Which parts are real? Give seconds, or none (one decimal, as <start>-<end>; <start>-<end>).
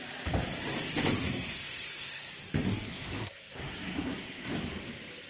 0.0-1.2; 2.3-2.7; 4.5-5.3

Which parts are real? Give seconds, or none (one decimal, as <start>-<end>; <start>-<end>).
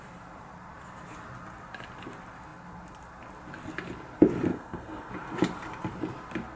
0.0-4.5; 5.1-6.6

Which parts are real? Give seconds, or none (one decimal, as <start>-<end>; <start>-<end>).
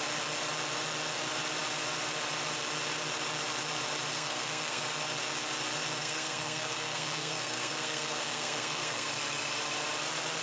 0.0-4.1; 4.8-6.0; 9.1-10.4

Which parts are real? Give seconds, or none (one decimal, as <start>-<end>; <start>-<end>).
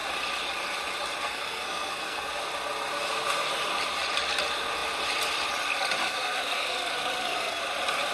0.0-1.2; 2.3-6.0; 7.6-8.1